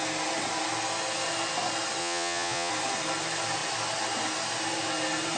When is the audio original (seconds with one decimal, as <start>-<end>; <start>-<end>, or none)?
0.0-2.0; 2.7-5.4